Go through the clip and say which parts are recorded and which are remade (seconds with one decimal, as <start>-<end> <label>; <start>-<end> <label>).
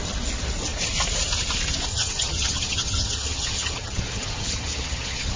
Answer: 0.0-1.9 recorded; 1.9-5.4 remade